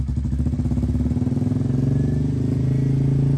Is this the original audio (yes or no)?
yes